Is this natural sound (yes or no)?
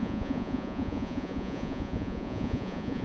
no